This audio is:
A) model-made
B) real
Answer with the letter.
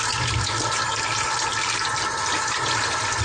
B